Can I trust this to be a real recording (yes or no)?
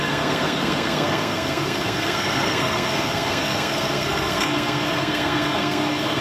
no